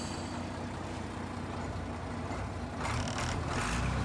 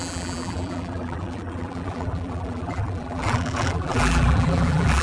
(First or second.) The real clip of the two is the first